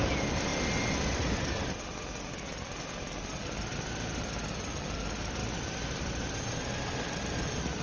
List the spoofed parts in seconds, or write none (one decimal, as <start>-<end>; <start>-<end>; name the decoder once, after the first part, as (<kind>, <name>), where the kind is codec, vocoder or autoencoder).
5.4-6.0 (vocoder, BigVGAN v2)